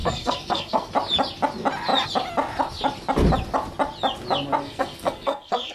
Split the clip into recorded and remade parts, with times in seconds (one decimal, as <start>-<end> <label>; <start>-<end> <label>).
0.0-0.9 remade; 0.9-4.6 recorded; 4.6-5.7 remade